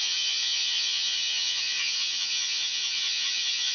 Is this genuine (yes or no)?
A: no